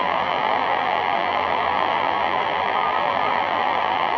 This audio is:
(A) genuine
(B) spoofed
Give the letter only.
B